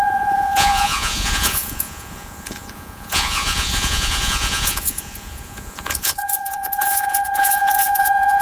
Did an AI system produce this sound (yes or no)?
yes